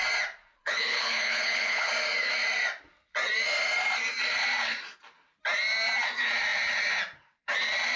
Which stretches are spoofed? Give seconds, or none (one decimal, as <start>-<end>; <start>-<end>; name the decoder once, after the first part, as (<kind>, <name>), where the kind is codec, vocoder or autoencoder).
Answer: 0.6-1.9 (codec, HILCodec)